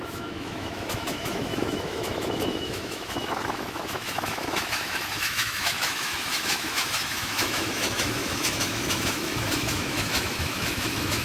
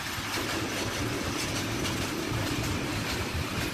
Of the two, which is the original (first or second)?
second